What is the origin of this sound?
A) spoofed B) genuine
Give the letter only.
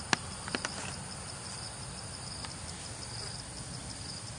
B